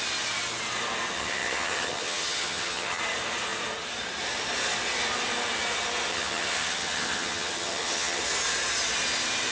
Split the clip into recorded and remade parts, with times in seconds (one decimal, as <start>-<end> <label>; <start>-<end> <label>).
0.0-1.1 recorded; 1.1-3.0 remade; 3.0-6.1 recorded; 6.1-8.2 remade; 8.2-9.5 recorded